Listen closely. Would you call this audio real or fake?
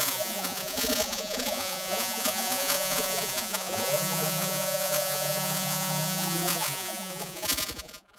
fake